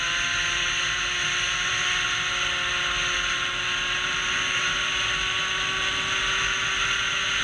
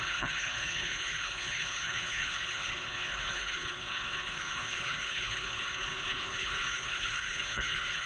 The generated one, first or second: second